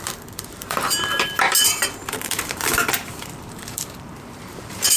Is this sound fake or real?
fake